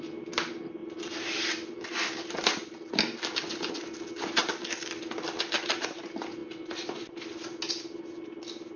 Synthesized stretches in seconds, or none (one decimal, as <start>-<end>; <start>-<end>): 0.8-3.7; 4.4-6.0